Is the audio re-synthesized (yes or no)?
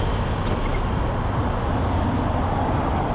no